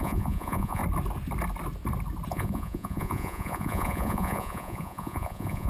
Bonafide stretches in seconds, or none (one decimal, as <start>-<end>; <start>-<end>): 0.8-2.3